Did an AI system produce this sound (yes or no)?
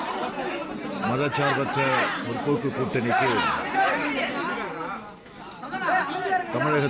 no